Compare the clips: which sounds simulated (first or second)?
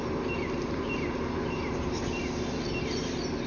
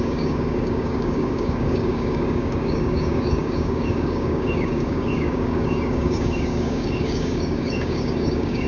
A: second